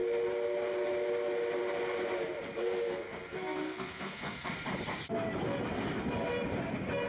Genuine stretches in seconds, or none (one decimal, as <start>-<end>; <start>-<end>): 0.0-2.6; 4.5-7.1